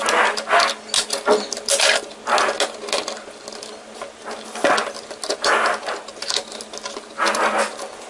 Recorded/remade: recorded